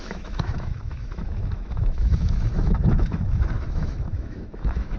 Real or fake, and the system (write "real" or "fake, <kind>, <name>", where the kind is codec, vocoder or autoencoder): fake, autoencoder, DAC-VAE